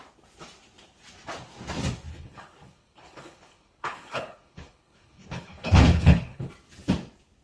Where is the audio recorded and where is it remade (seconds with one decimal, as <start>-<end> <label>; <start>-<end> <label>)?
0.0-2.1 recorded; 2.1-6.5 remade; 6.5-7.4 recorded